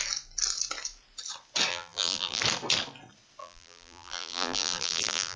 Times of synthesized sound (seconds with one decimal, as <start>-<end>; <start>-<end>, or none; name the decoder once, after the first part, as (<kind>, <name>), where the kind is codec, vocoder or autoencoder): 1.7-2.4 (vocoder, BigVGAN v2); 3.4-5.4